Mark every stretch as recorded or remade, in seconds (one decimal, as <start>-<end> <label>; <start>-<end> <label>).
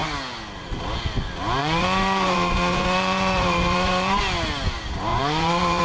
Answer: 0.0-1.6 recorded; 1.6-4.2 remade; 4.2-5.1 recorded; 5.1-5.8 remade